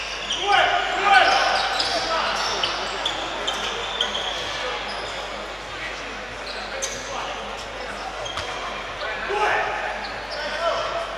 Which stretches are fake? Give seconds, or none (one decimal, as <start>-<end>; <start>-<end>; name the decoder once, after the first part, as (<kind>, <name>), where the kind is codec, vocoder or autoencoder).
8.6-9.7 (vocoder, BigVGAN v2)